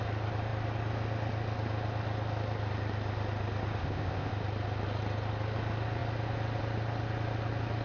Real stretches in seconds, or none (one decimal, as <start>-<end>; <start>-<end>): 0.0-3.8; 4.3-7.8